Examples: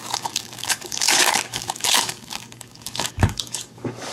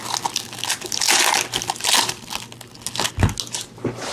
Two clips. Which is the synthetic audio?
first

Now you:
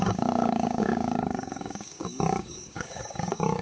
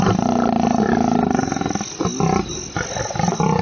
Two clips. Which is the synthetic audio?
first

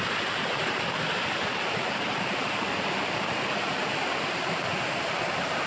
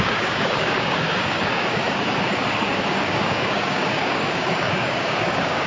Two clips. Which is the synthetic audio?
second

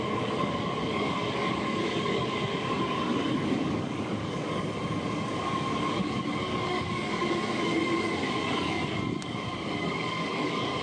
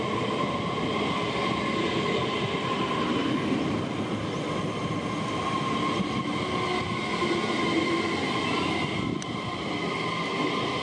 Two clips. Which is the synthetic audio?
first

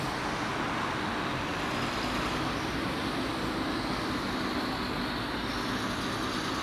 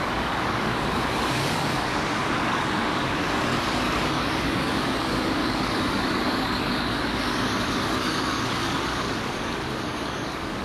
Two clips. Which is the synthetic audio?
second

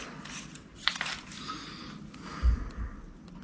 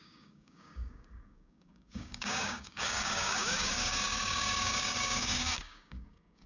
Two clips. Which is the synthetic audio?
second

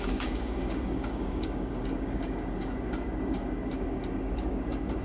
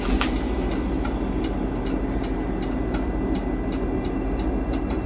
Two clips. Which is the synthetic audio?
first